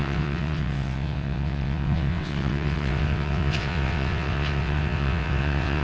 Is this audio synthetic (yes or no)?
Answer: yes